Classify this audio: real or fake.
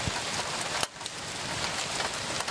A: real